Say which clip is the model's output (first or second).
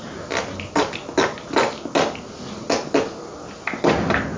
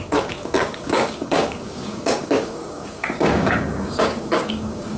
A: second